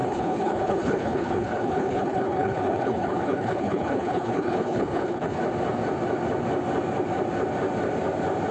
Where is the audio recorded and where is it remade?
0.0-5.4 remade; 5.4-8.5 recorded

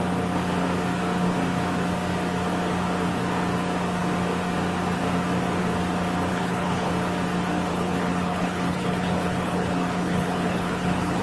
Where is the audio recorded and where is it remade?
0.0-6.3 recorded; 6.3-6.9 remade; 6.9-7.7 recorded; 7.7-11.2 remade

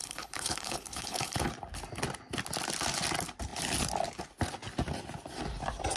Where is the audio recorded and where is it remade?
0.0-1.5 remade; 1.5-6.0 recorded